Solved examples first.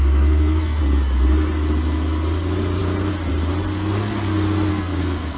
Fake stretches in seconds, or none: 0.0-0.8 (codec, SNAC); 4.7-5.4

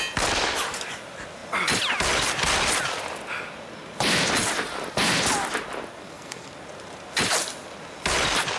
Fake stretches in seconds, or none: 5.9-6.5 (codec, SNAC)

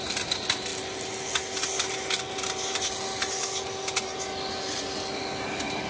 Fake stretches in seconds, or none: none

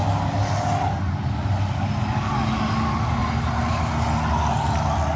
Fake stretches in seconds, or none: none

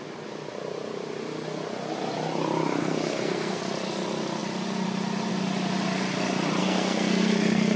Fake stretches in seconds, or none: 2.8-3.6 (codec, SNAC); 6.6-7.8

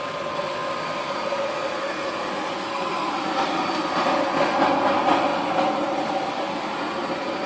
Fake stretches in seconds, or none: 2.5-3.1 (codec, SNAC)